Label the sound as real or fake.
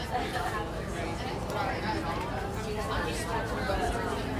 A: real